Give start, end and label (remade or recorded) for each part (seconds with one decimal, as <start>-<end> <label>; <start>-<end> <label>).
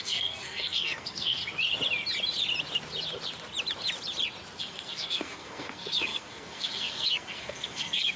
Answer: 0.0-1.4 remade; 1.4-4.6 recorded; 4.6-8.2 remade